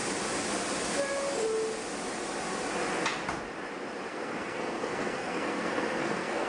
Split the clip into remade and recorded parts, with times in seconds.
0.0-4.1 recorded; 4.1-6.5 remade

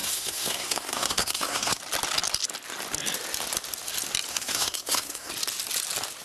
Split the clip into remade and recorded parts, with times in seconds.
0.0-1.8 remade; 1.8-4.3 recorded; 4.3-5.3 remade; 5.3-6.2 recorded

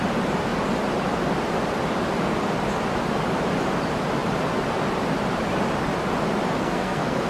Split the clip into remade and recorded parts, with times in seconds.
0.0-6.6 recorded; 6.6-7.3 remade

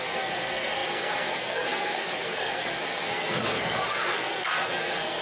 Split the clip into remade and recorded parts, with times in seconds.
0.0-5.2 remade

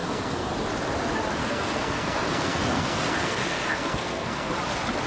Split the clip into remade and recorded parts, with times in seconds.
0.0-0.5 remade; 0.5-1.4 recorded; 1.4-4.5 remade; 4.5-5.1 recorded